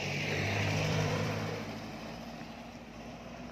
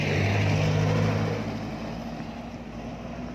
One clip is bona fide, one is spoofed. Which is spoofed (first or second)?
first